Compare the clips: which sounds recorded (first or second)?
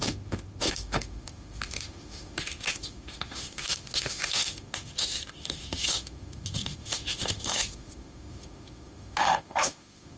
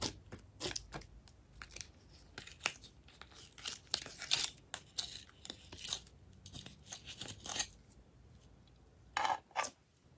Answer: second